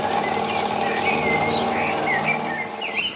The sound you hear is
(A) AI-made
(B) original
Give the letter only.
B